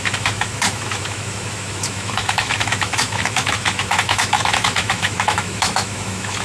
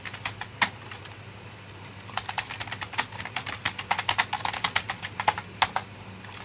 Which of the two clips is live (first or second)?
second